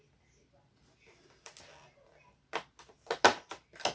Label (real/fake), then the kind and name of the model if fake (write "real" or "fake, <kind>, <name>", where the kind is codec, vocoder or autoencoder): real